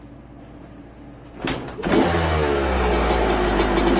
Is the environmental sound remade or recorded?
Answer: recorded